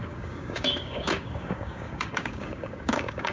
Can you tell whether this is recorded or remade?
remade